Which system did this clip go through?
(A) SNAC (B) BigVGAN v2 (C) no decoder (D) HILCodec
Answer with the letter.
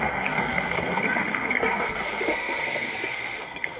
A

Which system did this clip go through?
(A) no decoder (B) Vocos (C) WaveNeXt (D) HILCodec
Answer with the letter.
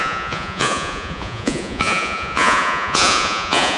B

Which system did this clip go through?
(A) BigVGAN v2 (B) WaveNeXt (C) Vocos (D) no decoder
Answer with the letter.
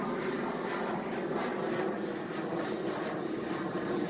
D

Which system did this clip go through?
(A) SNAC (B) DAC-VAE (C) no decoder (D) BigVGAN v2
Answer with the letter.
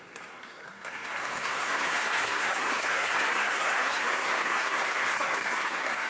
A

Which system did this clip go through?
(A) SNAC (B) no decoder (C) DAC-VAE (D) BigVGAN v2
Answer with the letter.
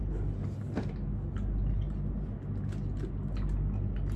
B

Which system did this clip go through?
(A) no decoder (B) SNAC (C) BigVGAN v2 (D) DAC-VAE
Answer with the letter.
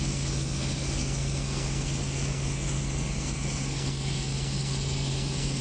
B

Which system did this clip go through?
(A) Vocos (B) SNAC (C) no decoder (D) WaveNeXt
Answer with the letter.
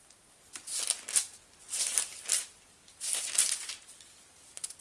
C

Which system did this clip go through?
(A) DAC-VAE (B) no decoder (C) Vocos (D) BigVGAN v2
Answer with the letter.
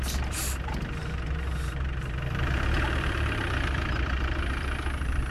D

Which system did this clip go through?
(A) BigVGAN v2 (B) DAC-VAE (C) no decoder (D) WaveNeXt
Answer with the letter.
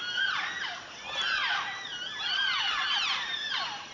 C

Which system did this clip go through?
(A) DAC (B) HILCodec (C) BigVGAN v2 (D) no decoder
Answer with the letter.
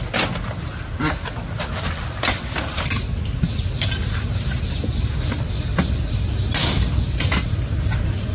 D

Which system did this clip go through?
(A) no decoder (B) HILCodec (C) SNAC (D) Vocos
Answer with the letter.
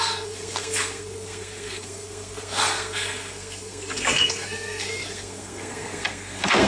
C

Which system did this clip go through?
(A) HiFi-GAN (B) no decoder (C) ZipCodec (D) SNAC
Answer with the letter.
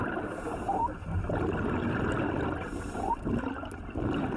B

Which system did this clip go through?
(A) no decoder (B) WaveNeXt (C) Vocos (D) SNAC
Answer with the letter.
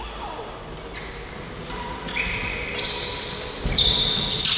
A